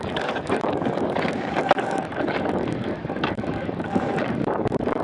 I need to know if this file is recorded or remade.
remade